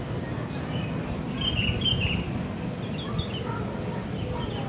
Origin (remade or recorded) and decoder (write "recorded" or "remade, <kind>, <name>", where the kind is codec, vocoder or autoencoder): recorded